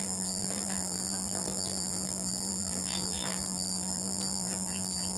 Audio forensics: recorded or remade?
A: remade